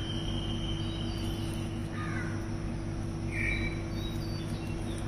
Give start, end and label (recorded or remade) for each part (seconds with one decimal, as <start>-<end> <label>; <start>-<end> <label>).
0.0-5.1 recorded